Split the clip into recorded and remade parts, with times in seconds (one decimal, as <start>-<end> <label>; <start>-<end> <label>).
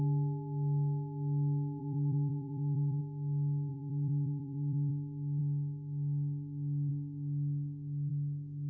0.0-1.8 recorded; 1.8-3.0 remade; 3.0-3.7 recorded; 3.7-4.9 remade; 4.9-8.7 recorded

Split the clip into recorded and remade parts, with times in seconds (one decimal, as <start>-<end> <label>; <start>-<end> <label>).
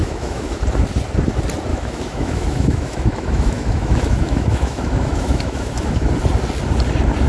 0.0-0.6 remade; 0.6-1.7 recorded; 1.7-6.1 remade; 6.1-7.3 recorded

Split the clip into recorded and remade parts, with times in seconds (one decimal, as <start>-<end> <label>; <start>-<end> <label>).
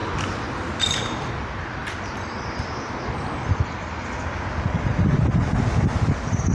0.0-1.8 recorded; 1.8-2.7 remade; 2.7-6.5 recorded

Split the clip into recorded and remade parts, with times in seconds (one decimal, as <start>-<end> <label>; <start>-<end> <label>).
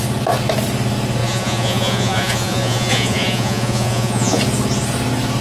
0.0-1.2 recorded; 1.2-4.4 remade; 4.4-5.4 recorded